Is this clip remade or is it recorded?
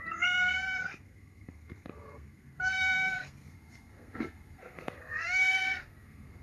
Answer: remade